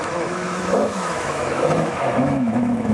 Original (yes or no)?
no